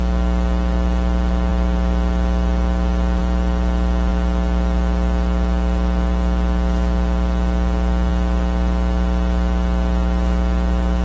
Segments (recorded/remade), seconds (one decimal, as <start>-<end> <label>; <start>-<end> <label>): 0.0-11.0 recorded